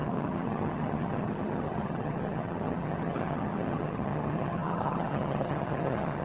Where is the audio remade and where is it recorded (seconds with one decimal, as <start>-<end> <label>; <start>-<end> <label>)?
0.0-6.2 remade